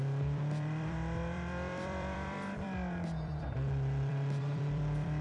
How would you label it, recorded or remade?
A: remade